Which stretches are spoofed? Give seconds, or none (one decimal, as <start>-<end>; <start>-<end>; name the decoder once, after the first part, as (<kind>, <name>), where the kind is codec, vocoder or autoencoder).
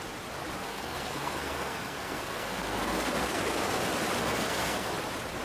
0.6-3.8 (codec, SNAC); 4.2-4.9